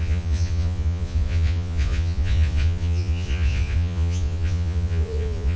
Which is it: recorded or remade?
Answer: remade